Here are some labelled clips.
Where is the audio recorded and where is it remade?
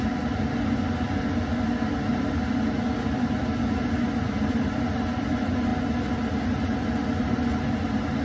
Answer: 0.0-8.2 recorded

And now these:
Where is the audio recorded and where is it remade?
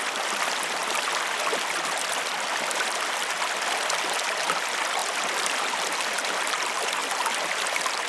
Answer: 0.0-8.1 recorded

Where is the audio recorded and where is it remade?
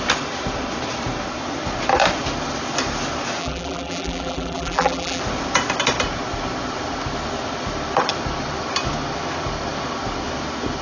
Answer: 0.0-3.4 recorded; 3.4-5.2 remade; 5.2-10.8 recorded